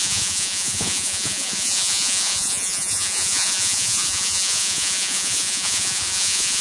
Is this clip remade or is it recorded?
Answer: remade